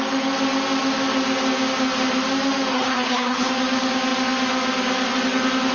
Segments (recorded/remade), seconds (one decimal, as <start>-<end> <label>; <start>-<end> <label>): 0.0-2.7 recorded; 2.7-3.5 remade; 3.5-5.7 recorded

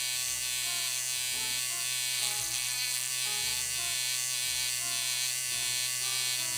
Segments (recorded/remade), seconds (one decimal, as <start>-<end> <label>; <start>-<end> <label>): 0.0-2.2 recorded; 2.2-3.1 remade; 3.1-6.6 recorded

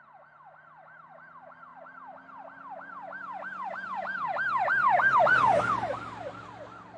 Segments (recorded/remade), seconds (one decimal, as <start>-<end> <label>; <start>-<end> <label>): 0.0-7.0 recorded

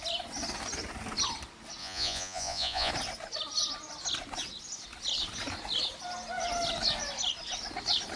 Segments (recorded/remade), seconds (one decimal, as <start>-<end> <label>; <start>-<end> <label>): 0.0-1.8 recorded; 1.8-2.9 remade; 2.9-8.2 recorded

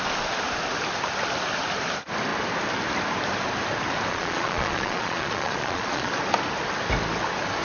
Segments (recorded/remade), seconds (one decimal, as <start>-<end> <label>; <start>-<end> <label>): 0.0-4.1 recorded; 4.1-6.1 remade; 6.1-7.6 recorded